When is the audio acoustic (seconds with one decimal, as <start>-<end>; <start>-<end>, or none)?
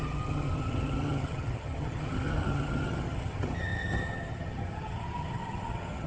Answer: none